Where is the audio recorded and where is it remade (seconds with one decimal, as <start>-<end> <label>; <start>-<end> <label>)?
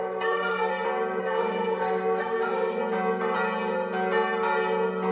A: 0.0-0.7 remade; 0.7-1.2 recorded; 1.2-2.8 remade; 2.8-5.1 recorded